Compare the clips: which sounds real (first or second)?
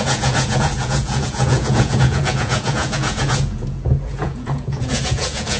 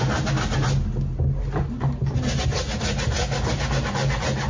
second